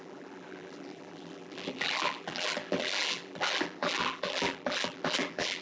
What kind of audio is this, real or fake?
fake